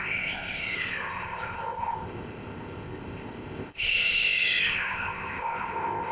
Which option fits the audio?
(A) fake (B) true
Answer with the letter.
A